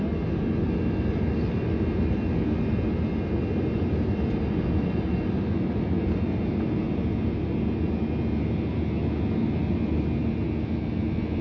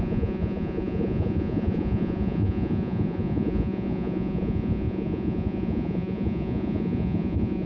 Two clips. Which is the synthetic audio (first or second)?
second